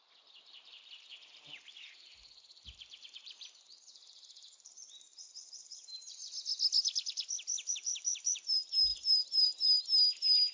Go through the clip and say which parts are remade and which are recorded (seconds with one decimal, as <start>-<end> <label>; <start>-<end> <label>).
0.0-6.2 remade; 6.2-7.7 recorded; 7.7-10.5 remade